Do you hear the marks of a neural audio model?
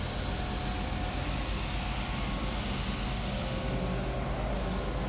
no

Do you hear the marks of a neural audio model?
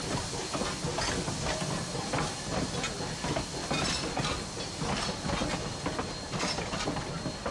no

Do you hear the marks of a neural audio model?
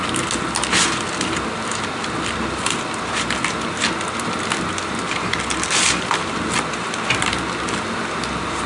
no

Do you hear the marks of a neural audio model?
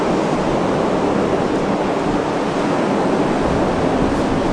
no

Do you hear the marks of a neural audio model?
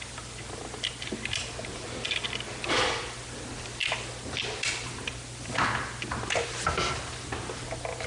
no